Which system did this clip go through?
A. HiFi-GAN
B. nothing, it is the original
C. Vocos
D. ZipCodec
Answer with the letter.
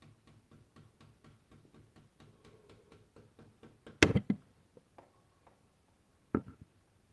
B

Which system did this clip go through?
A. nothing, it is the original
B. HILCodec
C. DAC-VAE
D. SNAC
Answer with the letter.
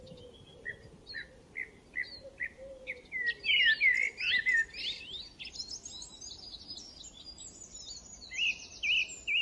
A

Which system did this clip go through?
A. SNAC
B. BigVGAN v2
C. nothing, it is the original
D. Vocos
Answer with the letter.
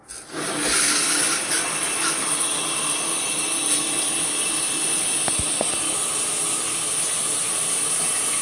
C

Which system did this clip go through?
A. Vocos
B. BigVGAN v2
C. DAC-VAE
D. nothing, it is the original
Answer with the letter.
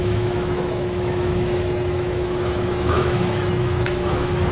C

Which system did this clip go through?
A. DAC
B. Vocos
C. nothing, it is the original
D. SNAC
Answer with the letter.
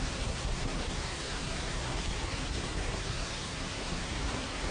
D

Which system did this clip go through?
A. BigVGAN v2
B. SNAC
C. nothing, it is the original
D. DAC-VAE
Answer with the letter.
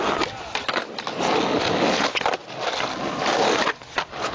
C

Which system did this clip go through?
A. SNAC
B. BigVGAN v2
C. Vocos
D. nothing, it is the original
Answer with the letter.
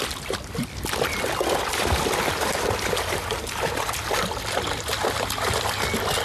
D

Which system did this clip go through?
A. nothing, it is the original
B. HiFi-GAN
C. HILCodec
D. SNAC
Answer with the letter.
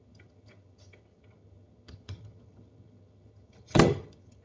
B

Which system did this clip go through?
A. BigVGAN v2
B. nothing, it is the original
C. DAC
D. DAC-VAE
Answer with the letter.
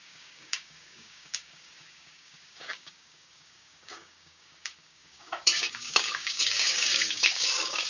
C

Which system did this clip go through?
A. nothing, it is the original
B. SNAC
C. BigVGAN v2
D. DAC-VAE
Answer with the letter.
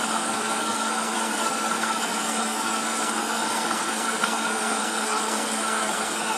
B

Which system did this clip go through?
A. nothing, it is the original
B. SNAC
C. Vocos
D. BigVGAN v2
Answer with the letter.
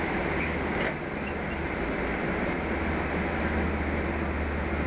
A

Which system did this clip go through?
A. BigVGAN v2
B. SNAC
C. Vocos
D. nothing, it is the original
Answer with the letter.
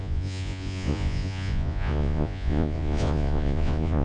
C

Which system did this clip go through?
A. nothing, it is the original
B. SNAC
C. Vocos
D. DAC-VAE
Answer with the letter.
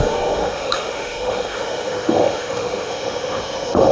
D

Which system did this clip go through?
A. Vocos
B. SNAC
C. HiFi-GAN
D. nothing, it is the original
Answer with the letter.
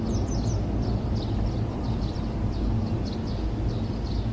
D